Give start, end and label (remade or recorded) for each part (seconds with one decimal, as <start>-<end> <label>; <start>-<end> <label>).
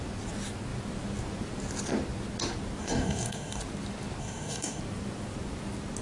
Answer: 0.0-2.8 recorded; 2.8-3.6 remade; 3.6-4.2 recorded; 4.2-4.8 remade; 4.8-6.0 recorded